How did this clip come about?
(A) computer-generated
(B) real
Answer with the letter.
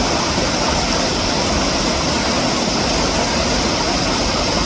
B